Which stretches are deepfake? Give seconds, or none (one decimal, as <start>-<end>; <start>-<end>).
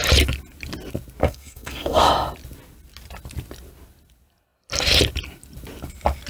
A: 1.2-2.1